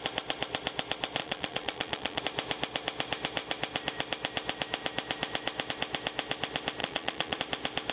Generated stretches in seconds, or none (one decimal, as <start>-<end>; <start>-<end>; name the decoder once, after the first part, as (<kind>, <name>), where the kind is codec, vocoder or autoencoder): 1.2-2.2 (vocoder, Vocos); 6.8-7.4